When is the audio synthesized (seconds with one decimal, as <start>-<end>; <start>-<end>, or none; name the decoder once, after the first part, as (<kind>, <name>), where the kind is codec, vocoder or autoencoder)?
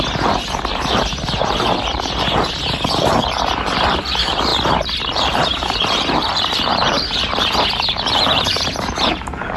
0.0-4.5 (vocoder, BigVGAN v2); 5.0-9.6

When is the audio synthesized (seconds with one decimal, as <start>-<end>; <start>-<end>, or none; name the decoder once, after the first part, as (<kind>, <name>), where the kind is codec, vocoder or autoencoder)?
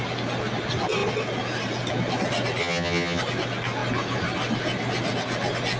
2.6-3.2 (vocoder, HiFi-GAN)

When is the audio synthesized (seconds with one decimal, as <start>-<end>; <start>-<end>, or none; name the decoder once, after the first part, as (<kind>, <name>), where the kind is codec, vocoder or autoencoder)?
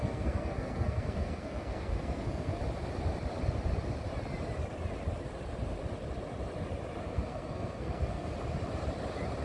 0.0-2.6 (codec, SNAC); 7.0-8.3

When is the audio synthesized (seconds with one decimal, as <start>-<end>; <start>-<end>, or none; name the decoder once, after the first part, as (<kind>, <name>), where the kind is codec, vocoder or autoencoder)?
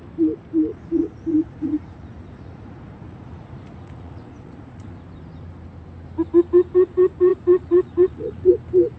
0.7-5.0 (vocoder, Vocos); 7.3-8.5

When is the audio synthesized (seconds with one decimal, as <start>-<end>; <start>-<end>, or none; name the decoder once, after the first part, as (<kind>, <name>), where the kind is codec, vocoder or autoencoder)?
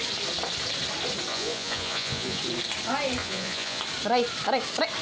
1.3-2.4 (vocoder, Vocos); 3.2-3.8